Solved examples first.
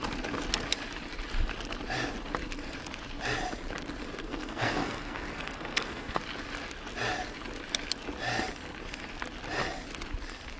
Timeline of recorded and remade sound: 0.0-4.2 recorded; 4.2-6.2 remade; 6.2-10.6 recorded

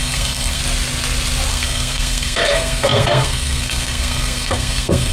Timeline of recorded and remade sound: 0.0-0.6 remade; 0.6-1.5 recorded; 1.5-5.1 remade

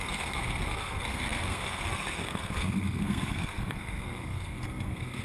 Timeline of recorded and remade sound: 0.0-5.2 remade

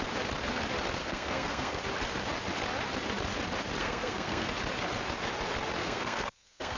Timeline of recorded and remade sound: 0.0-1.0 recorded; 1.0-1.8 remade; 1.8-3.8 recorded; 3.8-4.5 remade; 4.5-5.8 recorded; 5.8-6.8 remade

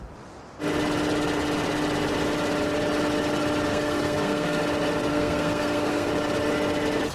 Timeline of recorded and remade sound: 0.0-3.7 recorded; 3.7-4.6 remade; 4.6-5.1 recorded; 5.1-6.1 remade; 6.1-7.1 recorded

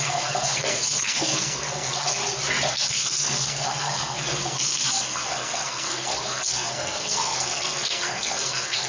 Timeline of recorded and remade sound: 0.0-2.2 remade; 2.2-2.7 recorded; 2.7-8.9 remade